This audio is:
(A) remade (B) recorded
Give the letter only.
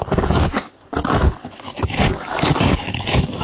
A